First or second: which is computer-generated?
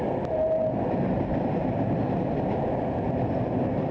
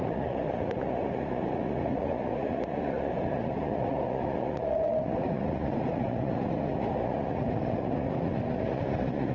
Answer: second